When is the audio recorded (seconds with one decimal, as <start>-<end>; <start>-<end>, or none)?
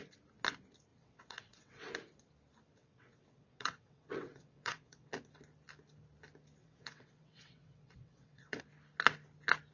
0.0-0.9; 1.9-2.8; 5.1-6.6; 8.6-9.7